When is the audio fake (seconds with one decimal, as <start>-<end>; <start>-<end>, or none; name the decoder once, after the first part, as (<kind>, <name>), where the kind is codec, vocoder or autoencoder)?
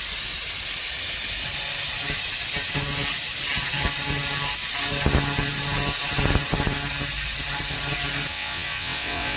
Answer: 8.3-9.4 (vocoder, WaveNeXt)